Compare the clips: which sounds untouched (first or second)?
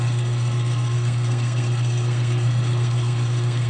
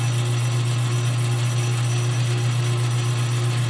second